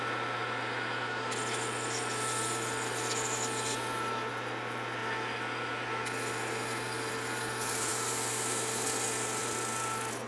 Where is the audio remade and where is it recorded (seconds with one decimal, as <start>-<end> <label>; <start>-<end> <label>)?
0.0-10.3 recorded